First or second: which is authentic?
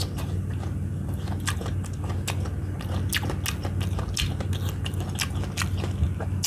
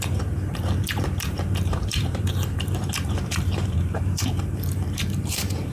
first